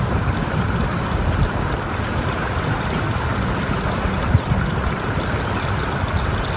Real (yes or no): yes